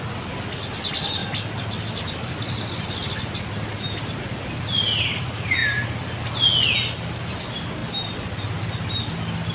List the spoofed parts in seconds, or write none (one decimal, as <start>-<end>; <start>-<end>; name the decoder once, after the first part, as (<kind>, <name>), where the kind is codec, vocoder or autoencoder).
none